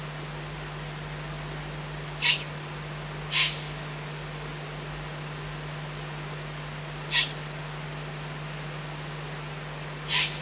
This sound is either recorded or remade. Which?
recorded